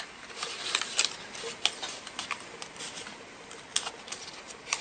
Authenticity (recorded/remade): recorded